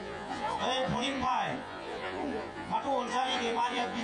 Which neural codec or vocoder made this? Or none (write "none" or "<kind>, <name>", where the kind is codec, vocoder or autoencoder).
vocoder, Vocos